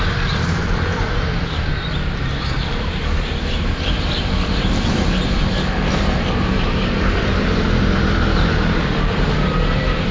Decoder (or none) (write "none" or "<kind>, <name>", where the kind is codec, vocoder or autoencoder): vocoder, BigVGAN v2